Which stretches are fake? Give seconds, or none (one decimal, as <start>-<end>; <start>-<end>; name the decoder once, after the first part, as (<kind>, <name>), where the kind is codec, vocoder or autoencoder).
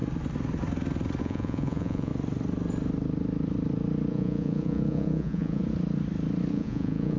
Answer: 1.2-2.1 (vocoder, Vocos); 4.1-5.6; 6.5-7.2